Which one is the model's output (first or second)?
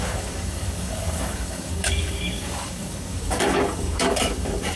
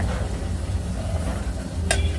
first